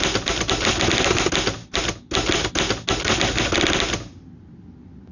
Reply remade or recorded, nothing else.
recorded